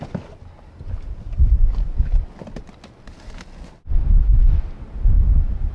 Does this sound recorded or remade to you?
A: recorded